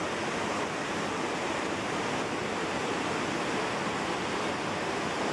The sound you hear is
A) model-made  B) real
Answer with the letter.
B